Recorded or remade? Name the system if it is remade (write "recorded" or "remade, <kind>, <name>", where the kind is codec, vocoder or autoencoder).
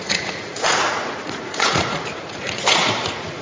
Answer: remade, vocoder, Vocos